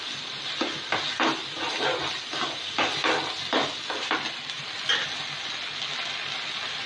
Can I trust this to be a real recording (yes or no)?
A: yes